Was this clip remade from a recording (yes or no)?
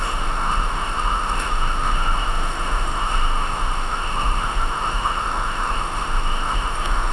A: yes